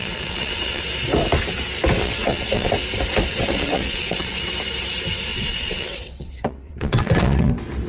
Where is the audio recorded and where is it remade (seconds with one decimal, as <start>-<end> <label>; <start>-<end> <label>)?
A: 0.0-0.8 remade; 0.8-2.0 recorded; 2.0-2.7 remade; 2.7-3.3 recorded; 3.3-4.5 remade; 4.5-5.3 recorded; 5.3-7.5 remade; 7.5-7.9 recorded